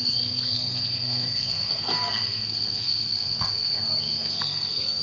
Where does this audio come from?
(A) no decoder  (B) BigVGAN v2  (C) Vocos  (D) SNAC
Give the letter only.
D